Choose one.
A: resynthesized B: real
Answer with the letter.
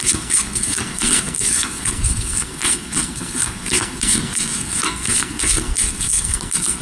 A